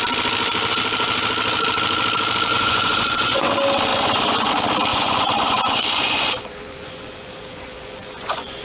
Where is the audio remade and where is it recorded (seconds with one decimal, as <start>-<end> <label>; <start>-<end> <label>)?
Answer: 0.0-2.5 recorded; 2.5-3.5 remade; 3.5-3.9 recorded; 3.9-4.5 remade; 4.5-4.9 recorded; 4.9-8.6 remade